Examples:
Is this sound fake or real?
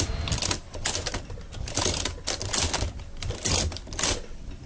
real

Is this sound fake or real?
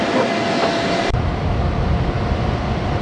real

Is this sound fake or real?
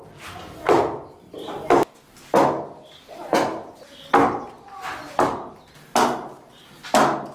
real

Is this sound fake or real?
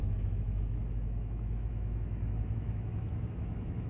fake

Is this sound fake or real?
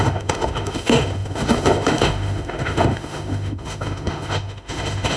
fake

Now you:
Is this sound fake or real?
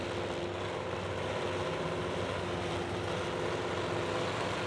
real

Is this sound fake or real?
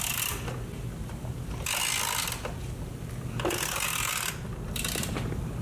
real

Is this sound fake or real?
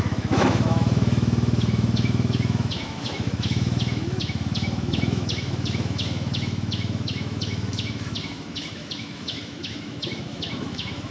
fake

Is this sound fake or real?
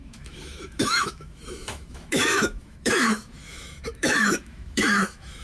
fake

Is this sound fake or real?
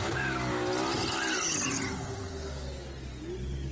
real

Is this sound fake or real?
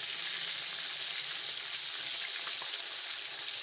real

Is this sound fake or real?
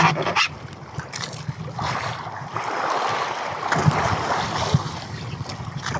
real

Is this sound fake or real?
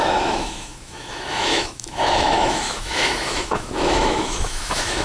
fake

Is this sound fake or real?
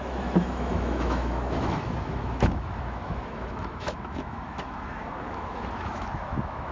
fake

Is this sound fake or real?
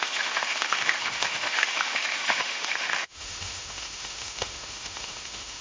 fake